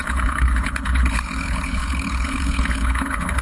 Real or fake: fake